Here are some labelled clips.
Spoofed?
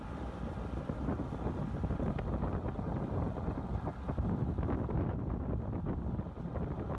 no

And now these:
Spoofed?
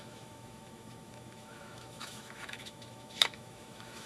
yes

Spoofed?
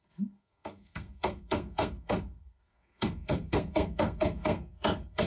yes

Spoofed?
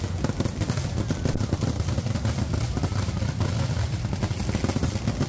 no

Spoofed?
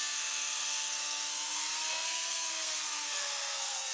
yes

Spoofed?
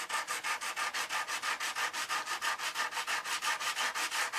yes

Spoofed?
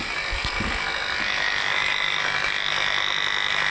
no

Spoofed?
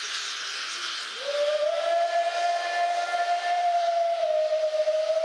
no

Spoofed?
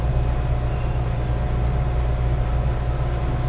no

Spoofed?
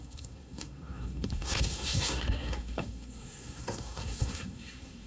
yes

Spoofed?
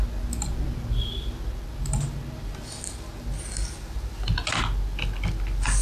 no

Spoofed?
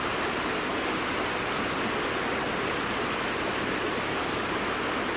no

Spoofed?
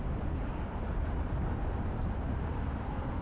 yes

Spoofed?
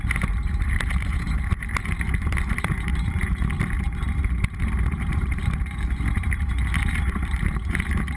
yes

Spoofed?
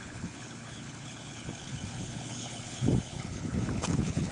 yes